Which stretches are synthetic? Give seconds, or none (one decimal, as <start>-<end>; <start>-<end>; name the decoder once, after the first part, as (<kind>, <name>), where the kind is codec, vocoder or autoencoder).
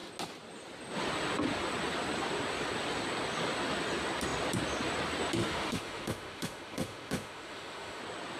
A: 5.4-8.0 (autoencoder, DAC-VAE)